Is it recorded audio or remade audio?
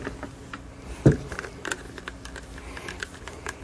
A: recorded